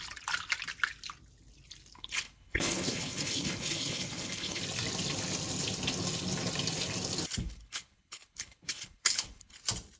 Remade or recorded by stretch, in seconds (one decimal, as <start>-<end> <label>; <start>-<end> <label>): 0.0-2.0 recorded; 2.0-4.6 remade; 4.6-7.4 recorded; 7.4-9.6 remade; 9.6-10.0 recorded